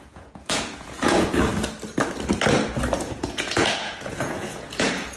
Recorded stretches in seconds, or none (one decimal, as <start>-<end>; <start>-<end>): 1.5-3.0